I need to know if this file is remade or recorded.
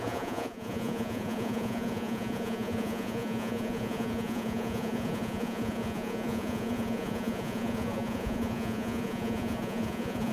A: remade